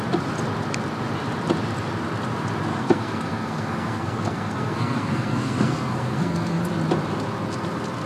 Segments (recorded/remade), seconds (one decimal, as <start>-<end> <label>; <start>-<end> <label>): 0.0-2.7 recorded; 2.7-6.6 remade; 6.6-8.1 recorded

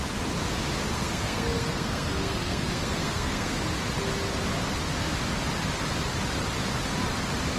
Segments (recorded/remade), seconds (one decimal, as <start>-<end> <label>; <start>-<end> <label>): 0.0-0.9 recorded; 0.9-3.6 remade; 3.6-7.6 recorded

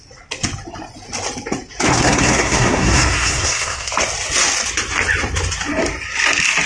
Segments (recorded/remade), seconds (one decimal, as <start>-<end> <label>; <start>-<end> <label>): 0.0-1.9 recorded; 1.9-3.9 remade; 3.9-6.7 recorded